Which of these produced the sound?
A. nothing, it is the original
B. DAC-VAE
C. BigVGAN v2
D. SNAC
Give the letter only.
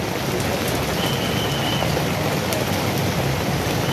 A